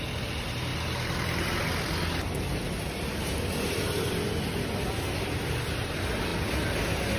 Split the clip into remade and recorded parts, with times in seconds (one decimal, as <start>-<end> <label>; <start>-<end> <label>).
0.0-7.2 recorded